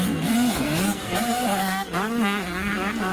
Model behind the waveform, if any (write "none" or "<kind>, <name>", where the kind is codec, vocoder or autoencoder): codec, SNAC